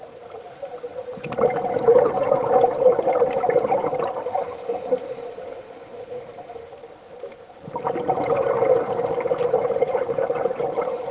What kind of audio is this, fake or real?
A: real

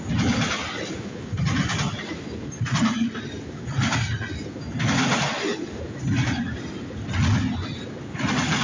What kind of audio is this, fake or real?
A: real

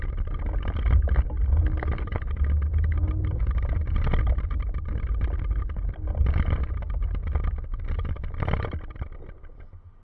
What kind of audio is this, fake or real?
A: real